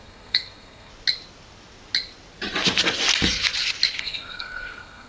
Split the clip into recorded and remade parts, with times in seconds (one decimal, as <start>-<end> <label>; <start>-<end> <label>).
0.0-0.9 remade; 0.9-4.0 recorded; 4.0-5.1 remade